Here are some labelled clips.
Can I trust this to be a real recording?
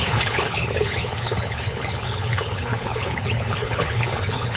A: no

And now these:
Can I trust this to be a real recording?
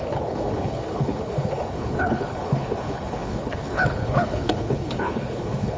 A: no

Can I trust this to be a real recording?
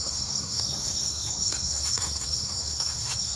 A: no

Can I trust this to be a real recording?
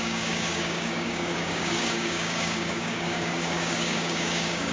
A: no